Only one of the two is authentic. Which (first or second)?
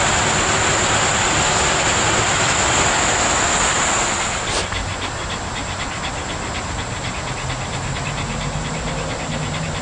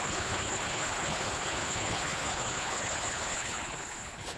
first